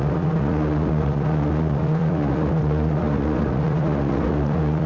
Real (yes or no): no